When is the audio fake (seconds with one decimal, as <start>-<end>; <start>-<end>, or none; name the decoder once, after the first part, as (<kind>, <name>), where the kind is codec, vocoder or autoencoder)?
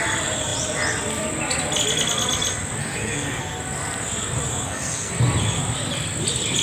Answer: 2.8-3.4 (codec, SNAC); 4.5-5.1